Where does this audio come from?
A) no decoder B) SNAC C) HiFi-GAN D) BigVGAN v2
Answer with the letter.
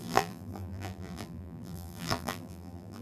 D